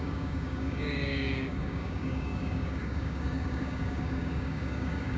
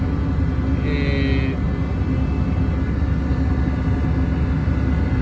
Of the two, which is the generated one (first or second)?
first